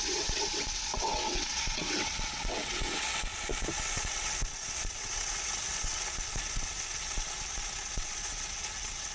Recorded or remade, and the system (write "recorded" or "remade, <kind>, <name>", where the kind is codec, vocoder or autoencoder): remade, vocoder, WaveNeXt